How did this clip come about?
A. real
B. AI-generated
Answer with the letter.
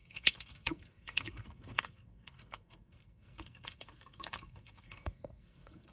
B